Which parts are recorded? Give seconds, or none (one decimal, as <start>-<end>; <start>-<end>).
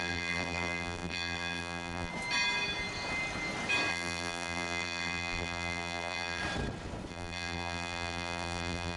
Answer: 2.1-3.9; 6.4-7.1